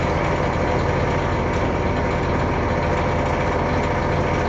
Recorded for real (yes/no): yes